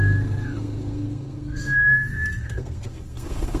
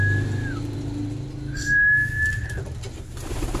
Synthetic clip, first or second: first